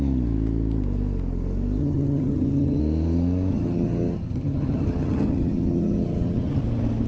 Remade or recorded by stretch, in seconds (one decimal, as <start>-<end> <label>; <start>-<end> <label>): 0.0-1.8 recorded; 1.8-2.8 remade; 2.8-3.5 recorded; 3.5-6.6 remade; 6.6-7.1 recorded